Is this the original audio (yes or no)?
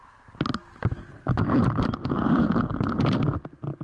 yes